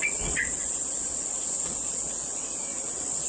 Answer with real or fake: fake